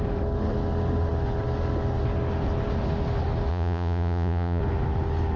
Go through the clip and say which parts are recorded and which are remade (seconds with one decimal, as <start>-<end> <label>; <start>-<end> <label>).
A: 0.0-3.5 recorded; 3.5-4.6 remade; 4.6-5.4 recorded